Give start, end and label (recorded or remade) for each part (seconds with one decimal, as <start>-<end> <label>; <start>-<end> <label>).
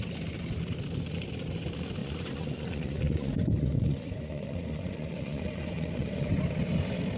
0.0-2.0 recorded; 2.0-6.3 remade; 6.3-7.2 recorded